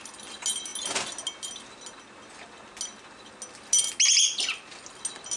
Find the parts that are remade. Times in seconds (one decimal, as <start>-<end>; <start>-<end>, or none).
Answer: none